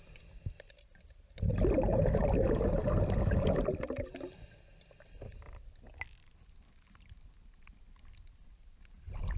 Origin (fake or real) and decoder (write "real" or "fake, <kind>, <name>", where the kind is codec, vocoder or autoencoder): real